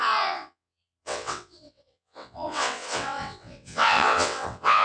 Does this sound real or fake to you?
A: fake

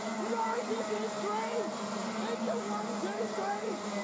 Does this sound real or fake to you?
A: real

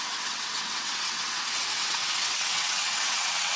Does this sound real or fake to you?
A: fake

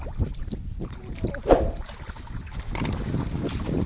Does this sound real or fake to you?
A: real